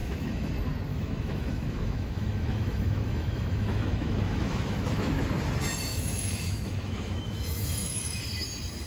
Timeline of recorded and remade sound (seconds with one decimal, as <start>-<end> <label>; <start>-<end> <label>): 0.0-0.5 remade; 0.5-0.9 recorded; 0.9-5.2 remade; 5.2-5.9 recorded; 5.9-8.2 remade; 8.2-8.9 recorded